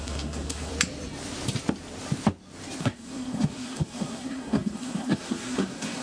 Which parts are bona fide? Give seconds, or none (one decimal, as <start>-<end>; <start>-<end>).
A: 0.7-2.8